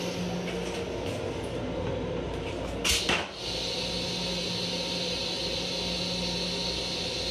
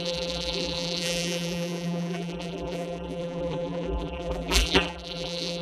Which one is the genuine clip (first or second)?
first